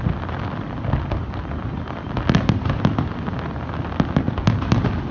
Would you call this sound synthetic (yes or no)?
no